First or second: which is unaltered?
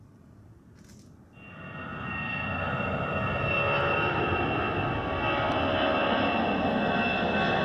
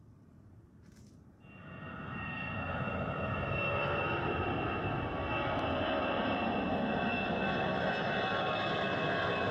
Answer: first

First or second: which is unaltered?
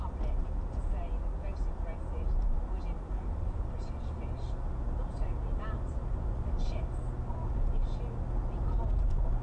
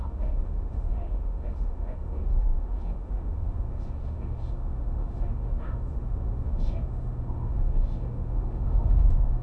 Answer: first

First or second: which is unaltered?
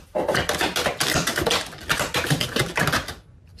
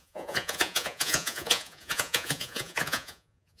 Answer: first